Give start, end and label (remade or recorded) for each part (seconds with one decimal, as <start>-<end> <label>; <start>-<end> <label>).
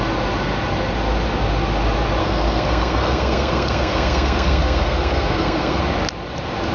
0.0-2.2 recorded; 2.2-5.8 remade; 5.8-6.7 recorded